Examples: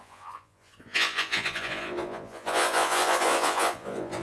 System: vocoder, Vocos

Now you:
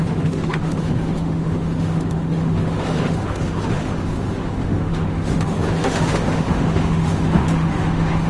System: autoencoder, DAC-VAE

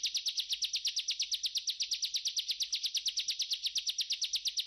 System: none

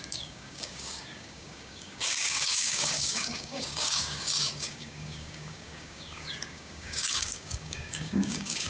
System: codec, DAC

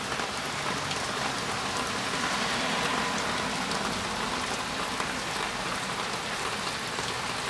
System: none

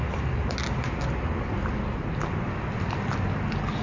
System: none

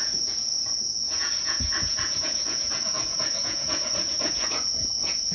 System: vocoder, Vocos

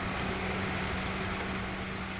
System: none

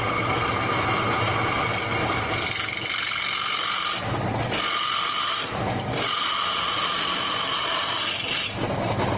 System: none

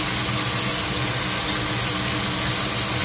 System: none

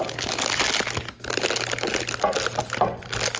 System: none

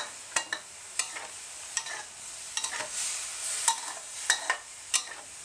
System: none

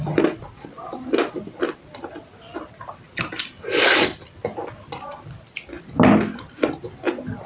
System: none